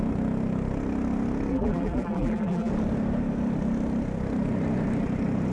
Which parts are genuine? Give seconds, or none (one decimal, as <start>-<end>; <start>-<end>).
0.0-1.5; 2.7-5.5